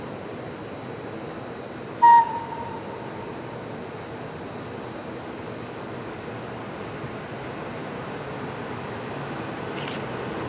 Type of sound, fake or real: real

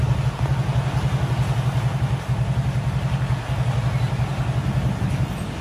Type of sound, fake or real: real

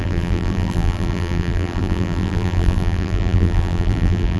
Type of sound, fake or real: fake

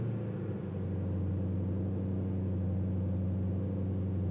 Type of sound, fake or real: real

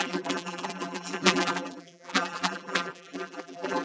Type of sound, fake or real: fake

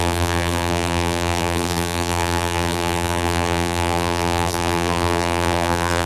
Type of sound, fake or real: fake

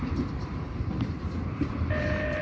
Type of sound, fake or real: real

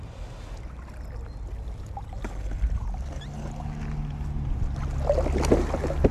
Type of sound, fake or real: real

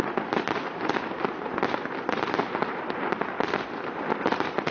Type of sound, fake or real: real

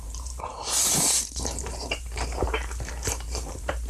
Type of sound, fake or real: fake